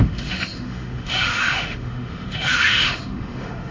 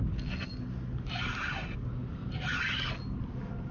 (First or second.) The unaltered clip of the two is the second